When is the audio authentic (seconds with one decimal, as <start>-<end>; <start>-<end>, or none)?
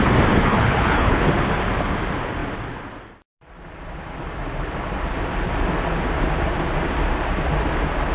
0.0-0.4; 1.2-8.1